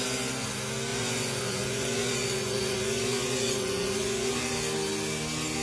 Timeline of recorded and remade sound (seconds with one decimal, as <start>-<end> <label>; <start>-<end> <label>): 0.0-0.9 recorded; 0.9-4.3 remade; 4.3-5.6 recorded